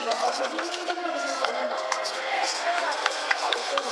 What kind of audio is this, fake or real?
fake